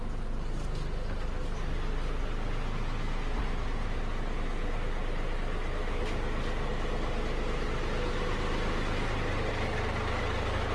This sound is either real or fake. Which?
real